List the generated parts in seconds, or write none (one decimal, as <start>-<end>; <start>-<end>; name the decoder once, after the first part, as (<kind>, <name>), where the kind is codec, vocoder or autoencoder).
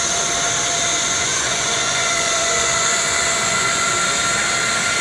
0.9-3.9 (vocoder, Vocos)